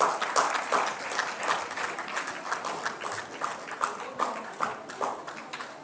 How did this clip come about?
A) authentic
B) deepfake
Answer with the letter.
A